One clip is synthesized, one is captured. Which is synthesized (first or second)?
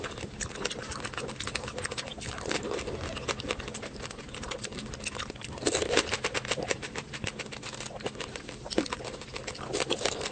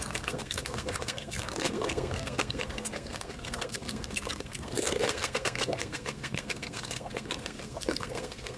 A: second